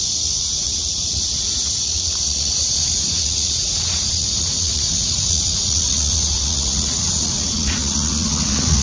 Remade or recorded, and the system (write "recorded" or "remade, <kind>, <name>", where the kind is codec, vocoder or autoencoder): remade, vocoder, Vocos